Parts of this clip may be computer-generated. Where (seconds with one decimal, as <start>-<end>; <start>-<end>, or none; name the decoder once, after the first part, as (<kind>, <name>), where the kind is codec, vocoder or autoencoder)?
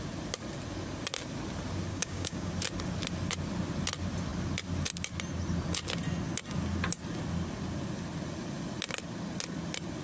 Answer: 1.9-2.5 (codec, DAC)